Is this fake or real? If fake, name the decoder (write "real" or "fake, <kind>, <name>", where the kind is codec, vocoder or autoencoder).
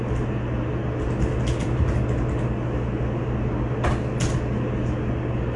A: real